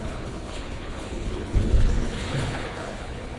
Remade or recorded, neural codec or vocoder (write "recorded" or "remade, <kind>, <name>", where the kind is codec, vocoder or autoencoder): remade, codec, HILCodec